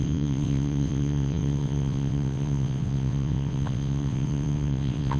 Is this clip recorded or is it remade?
remade